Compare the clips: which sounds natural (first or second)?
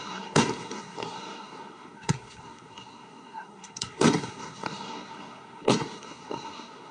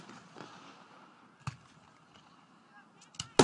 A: second